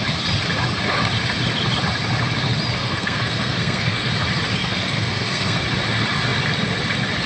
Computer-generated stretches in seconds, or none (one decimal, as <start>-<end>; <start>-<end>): 2.8-4.1; 4.6-5.6